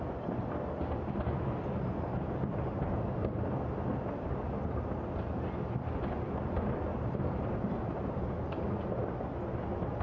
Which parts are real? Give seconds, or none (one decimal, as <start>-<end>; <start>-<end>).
0.0-6.9; 8.0-10.0